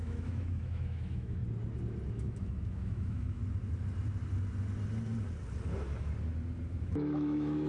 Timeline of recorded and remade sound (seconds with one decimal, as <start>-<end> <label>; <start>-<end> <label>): 0.0-1.4 remade; 1.4-2.1 recorded; 2.1-3.4 remade; 3.4-6.8 recorded; 6.8-7.7 remade